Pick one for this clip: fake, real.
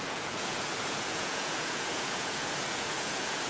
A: fake